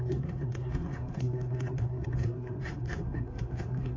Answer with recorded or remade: remade